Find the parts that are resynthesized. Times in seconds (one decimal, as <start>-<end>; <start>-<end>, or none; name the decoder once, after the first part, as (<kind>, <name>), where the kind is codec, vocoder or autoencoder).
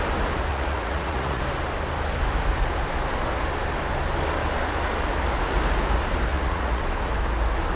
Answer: 0.5-1.4 (vocoder, Vocos); 6.3-6.8